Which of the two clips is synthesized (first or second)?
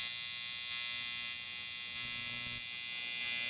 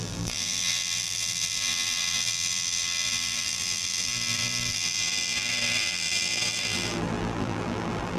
second